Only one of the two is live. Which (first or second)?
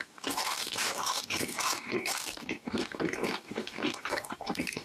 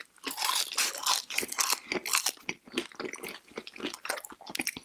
second